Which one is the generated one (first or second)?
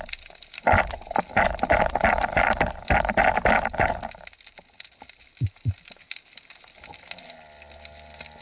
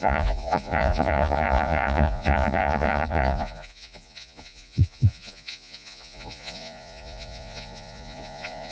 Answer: second